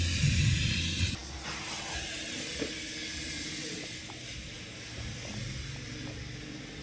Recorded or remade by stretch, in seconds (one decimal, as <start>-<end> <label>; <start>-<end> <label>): 0.0-6.8 recorded